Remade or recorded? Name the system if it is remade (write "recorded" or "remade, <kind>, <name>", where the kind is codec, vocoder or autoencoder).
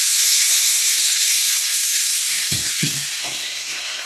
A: remade, codec, SNAC